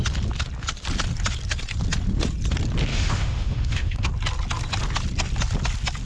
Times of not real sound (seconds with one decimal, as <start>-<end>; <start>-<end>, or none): 2.9-4.1